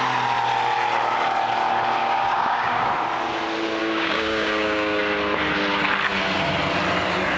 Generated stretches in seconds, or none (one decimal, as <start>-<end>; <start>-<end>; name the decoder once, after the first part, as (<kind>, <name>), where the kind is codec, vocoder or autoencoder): 2.0-2.9 (codec, DAC); 3.8-5.0